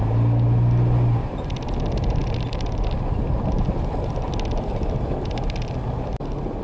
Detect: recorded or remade recorded